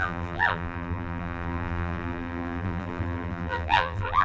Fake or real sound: fake